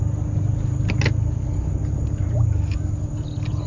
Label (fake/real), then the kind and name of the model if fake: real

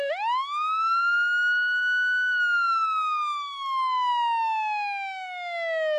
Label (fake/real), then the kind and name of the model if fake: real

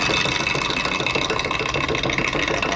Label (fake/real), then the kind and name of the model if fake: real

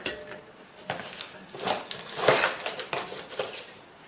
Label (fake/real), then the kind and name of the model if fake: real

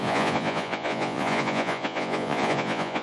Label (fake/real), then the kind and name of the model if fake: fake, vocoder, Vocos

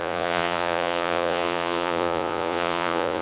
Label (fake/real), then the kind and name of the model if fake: fake, vocoder, Vocos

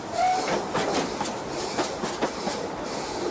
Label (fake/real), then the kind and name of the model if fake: real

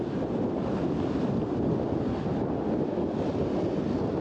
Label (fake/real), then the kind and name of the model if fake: real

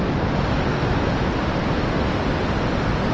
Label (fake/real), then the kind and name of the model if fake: real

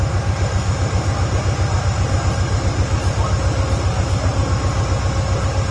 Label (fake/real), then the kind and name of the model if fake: real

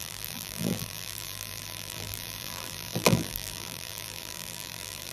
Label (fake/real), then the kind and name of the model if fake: fake, vocoder, BigVGAN v2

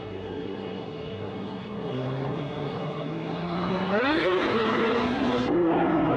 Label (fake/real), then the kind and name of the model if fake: fake, codec, SNAC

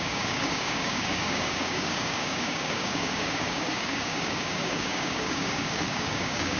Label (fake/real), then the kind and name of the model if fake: fake, codec, DAC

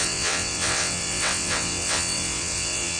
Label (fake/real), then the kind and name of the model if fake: fake, vocoder, WaveNeXt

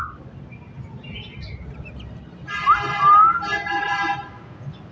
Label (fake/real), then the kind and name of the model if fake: real